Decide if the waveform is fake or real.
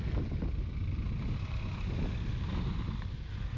real